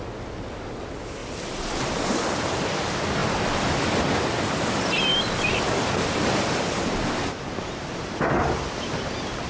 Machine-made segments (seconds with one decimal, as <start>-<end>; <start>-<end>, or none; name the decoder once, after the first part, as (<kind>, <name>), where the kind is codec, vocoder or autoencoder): 1.2-2.8 (vocoder, BigVGAN v2); 3.2-3.7; 5.1-7.1